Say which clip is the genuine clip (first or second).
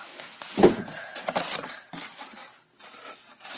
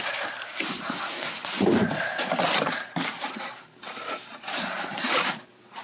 first